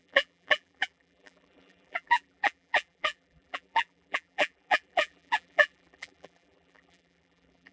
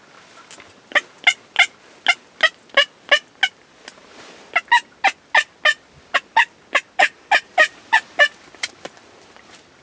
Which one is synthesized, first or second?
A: first